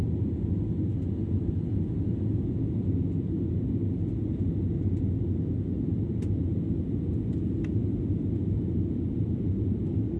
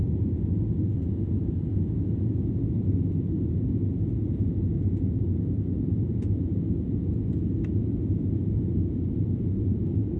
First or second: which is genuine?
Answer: first